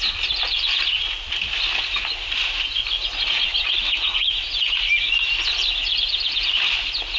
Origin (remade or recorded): recorded